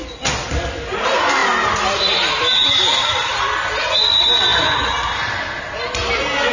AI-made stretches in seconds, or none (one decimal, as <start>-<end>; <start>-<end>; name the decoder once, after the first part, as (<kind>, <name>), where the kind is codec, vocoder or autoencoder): none